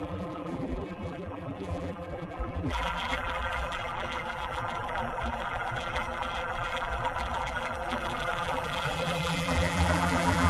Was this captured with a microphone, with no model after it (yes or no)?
no